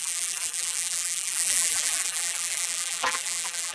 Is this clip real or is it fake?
fake